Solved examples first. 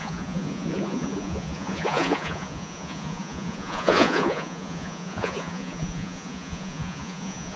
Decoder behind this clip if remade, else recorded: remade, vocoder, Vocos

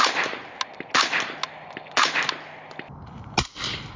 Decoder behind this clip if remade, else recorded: recorded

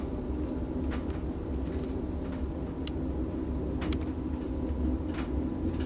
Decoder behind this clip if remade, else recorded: recorded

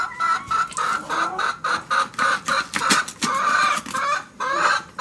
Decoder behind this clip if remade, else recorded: recorded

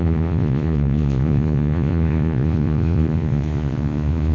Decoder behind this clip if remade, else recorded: remade, vocoder, Vocos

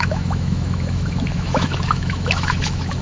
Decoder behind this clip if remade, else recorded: remade, autoencoder, DAC-VAE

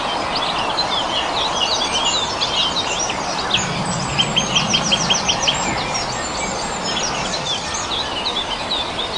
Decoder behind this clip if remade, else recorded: recorded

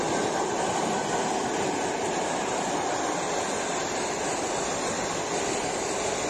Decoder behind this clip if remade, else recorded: recorded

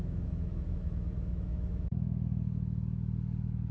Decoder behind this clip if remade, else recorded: remade, autoencoder, DAC-VAE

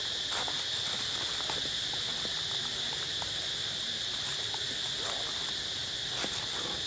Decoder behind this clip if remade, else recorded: recorded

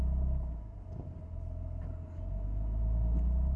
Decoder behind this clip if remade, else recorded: recorded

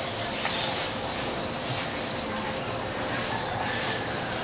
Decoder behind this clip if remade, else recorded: recorded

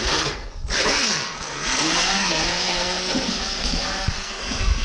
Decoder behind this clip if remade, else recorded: remade, codec, SNAC